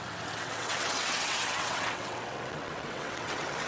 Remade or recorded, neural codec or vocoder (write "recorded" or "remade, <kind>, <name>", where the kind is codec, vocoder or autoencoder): remade, vocoder, WaveNeXt